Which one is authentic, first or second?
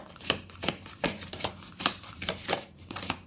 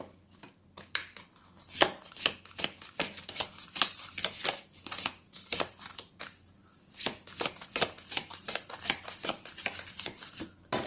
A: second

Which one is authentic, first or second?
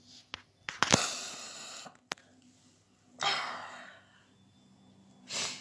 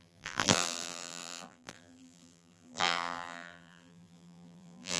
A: first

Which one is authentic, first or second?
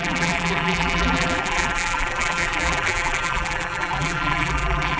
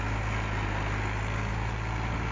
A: second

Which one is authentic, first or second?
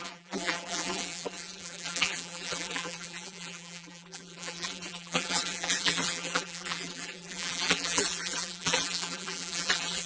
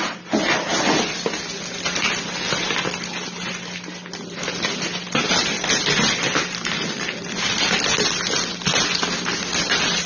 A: second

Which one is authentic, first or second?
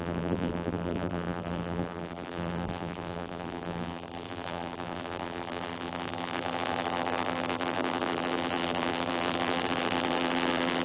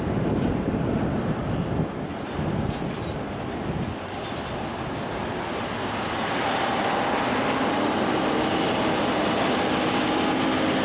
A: second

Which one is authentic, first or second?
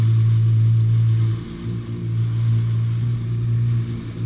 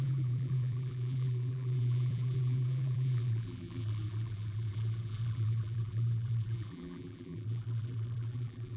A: first